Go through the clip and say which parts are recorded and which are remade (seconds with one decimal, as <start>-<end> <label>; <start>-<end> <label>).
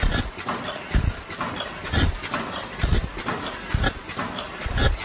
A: 0.0-5.0 recorded